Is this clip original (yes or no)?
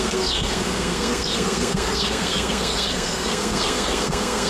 no